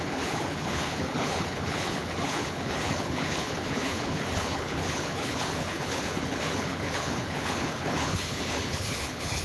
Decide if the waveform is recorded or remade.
remade